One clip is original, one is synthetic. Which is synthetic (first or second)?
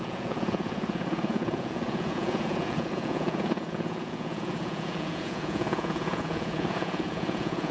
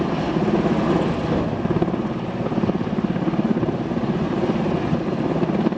first